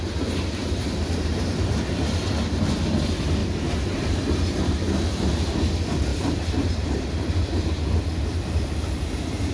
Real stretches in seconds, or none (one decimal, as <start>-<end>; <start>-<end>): 0.0-0.6; 1.4-3.4; 4.3-6.1; 7.1-9.5